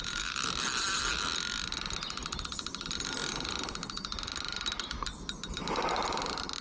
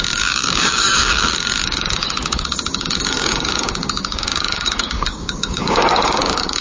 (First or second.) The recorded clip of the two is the first